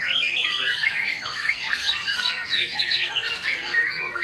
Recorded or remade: remade